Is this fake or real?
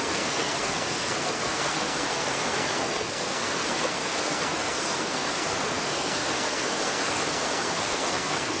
fake